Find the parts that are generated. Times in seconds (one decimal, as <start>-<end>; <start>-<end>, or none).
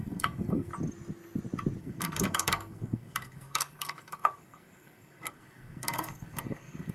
0.0-0.7; 1.8-6.9